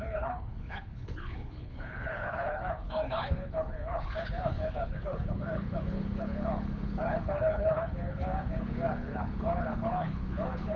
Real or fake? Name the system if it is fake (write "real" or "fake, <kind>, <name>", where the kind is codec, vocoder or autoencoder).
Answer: fake, codec, HILCodec